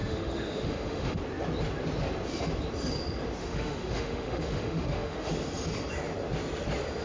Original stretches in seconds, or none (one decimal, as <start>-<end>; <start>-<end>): 1.2-3.4; 5.3-7.0